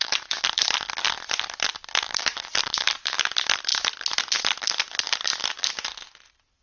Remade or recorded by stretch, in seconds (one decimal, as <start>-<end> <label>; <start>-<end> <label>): 0.0-0.6 remade; 0.6-2.0 recorded; 2.0-3.7 remade; 3.7-4.3 recorded; 4.3-5.3 remade; 5.3-6.6 recorded